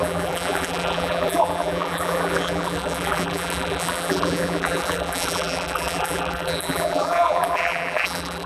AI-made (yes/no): yes